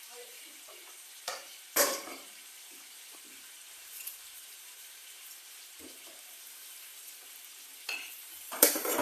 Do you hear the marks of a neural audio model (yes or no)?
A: yes